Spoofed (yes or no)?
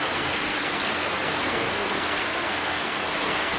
yes